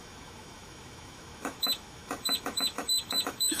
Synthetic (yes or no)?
yes